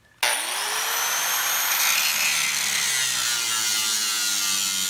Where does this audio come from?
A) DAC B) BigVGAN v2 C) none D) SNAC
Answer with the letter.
C